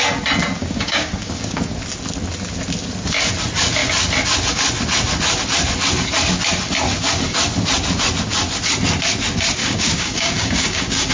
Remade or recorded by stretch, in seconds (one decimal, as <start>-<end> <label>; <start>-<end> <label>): 0.0-0.6 recorded; 0.6-1.6 remade; 1.6-9.6 recorded; 9.6-11.1 remade